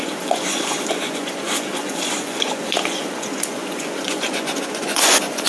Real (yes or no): no